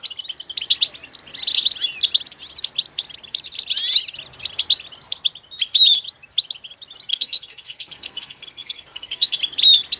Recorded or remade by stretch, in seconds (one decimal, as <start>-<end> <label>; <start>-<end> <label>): 0.0-7.1 recorded; 7.1-9.4 remade; 9.4-10.0 recorded